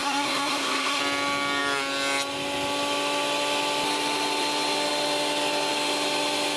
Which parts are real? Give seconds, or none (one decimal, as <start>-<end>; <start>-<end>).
1.0-6.6